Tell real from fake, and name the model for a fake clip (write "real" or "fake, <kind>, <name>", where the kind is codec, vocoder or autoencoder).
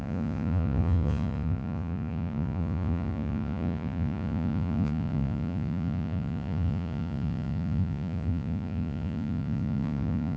fake, vocoder, Vocos